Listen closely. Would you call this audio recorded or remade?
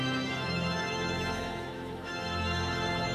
remade